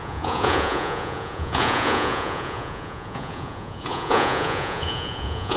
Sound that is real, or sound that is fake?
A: fake